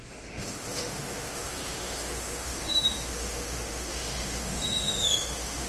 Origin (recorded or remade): remade